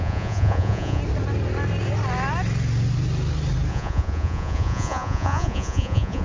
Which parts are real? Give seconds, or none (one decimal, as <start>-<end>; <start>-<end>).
1.0-3.7